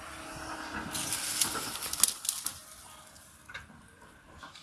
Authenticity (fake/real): real